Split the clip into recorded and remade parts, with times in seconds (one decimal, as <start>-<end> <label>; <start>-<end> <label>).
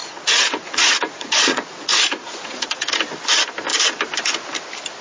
0.0-3.0 remade; 3.0-5.0 recorded